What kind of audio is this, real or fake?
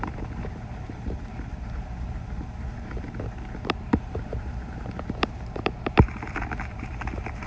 fake